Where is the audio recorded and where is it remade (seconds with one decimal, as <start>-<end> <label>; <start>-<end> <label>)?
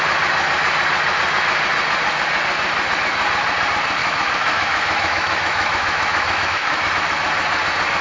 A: 0.0-4.0 recorded; 4.0-6.9 remade; 6.9-8.0 recorded